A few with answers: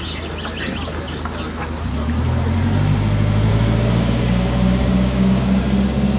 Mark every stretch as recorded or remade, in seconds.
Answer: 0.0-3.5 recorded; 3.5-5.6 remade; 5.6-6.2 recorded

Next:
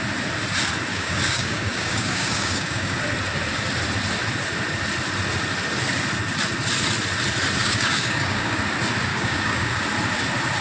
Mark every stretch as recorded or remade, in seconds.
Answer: 0.0-0.9 recorded; 0.9-3.0 remade; 3.0-7.6 recorded; 7.6-8.6 remade; 8.6-9.1 recorded; 9.1-9.8 remade; 9.8-10.6 recorded

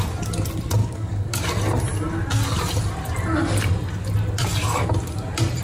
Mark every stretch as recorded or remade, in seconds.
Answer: 0.0-0.8 recorded; 0.8-1.4 remade; 1.4-5.6 recorded

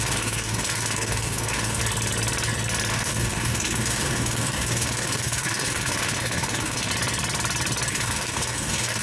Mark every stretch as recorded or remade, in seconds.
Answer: 0.0-1.8 remade; 1.8-2.9 recorded; 2.9-6.9 remade; 6.9-7.9 recorded; 7.9-9.0 remade